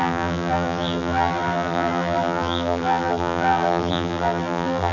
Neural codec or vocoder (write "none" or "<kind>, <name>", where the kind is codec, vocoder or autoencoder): vocoder, BigVGAN v2